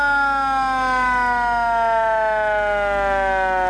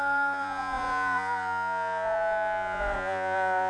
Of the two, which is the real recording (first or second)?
first